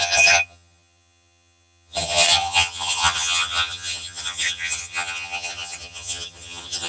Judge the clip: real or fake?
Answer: fake